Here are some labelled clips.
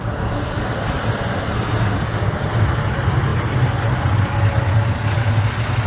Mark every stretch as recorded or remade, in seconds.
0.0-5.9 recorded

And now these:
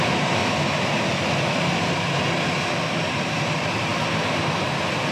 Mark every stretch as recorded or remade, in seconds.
0.0-0.4 remade; 0.4-3.1 recorded; 3.1-5.1 remade

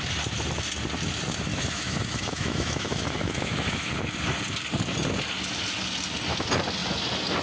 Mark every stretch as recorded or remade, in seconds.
0.0-1.5 recorded; 1.5-3.9 remade; 3.9-7.4 recorded

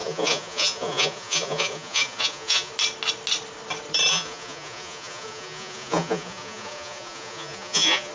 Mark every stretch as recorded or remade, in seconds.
0.0-2.7 remade; 2.7-4.1 recorded; 4.1-8.1 remade

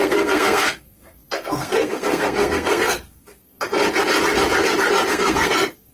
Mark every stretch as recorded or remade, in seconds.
0.0-3.8 remade; 3.8-5.1 recorded; 5.1-5.9 remade